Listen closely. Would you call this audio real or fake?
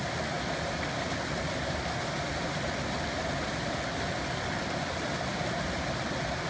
real